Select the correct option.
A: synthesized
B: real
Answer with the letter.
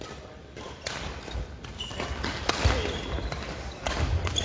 B